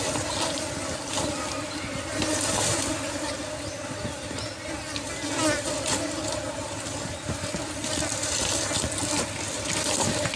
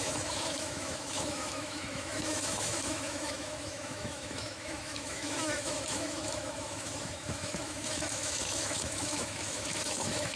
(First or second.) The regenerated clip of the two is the second